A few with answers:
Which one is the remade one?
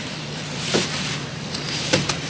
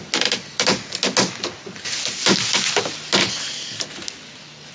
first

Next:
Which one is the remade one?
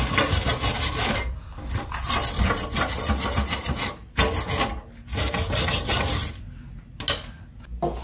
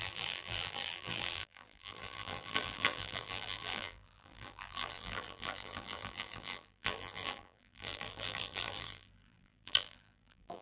second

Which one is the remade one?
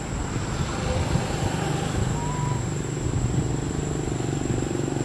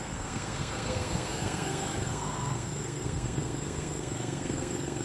second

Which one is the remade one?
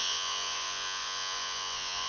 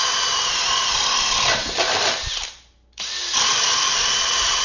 first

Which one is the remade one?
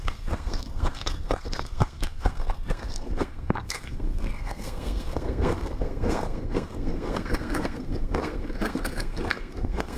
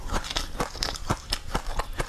first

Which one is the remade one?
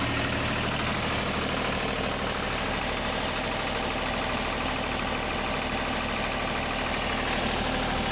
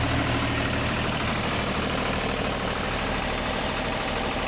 second